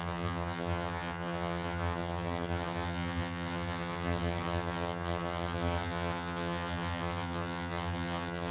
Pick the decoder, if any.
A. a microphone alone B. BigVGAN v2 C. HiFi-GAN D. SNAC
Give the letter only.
C